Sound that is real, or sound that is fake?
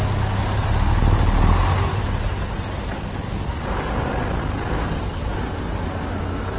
real